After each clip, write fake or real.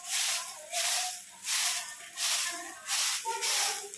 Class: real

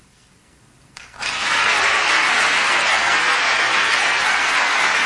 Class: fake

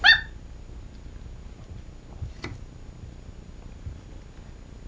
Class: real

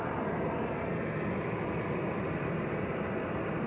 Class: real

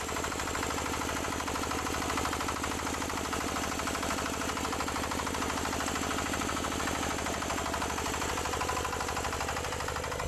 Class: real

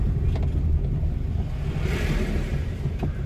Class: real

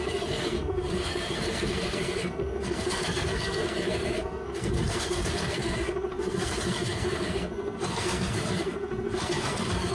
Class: fake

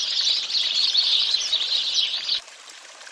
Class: fake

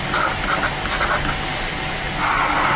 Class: real